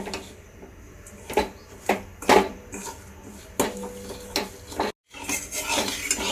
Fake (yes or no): no